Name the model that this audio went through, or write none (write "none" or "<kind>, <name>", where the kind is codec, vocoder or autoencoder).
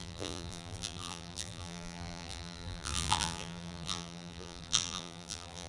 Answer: vocoder, BigVGAN v2